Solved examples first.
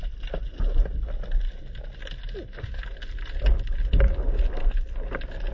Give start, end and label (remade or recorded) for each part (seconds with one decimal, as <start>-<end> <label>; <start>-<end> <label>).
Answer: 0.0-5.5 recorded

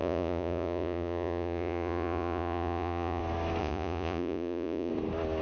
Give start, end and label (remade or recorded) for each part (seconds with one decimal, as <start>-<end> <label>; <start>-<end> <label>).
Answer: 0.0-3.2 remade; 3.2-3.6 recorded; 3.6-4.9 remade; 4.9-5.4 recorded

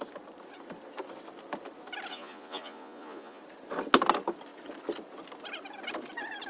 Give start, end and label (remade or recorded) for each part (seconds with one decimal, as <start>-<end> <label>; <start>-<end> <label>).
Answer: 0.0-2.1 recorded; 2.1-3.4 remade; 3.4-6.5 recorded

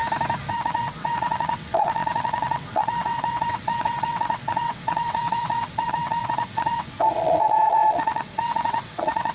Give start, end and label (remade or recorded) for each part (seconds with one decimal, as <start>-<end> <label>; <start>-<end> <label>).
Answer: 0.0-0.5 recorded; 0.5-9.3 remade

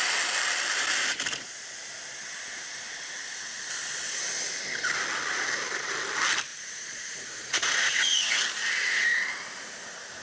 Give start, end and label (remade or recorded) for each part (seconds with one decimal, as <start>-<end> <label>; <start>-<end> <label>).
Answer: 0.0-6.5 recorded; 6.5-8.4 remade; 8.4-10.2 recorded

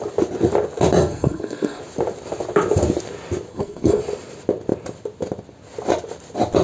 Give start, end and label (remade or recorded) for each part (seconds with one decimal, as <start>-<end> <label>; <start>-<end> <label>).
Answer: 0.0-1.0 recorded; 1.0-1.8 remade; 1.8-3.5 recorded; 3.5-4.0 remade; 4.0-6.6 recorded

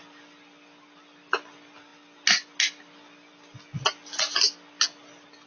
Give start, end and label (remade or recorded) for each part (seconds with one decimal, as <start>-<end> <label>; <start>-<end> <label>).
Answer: 0.0-5.5 recorded